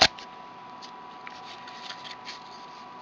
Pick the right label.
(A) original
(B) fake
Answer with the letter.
A